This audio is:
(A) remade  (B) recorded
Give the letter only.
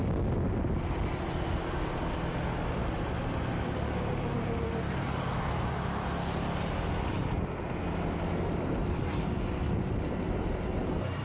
B